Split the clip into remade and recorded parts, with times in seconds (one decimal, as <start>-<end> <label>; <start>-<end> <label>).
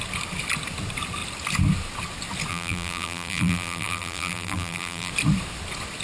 0.0-2.5 recorded; 2.5-5.1 remade; 5.1-6.0 recorded